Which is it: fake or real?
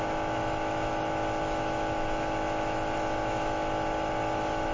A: fake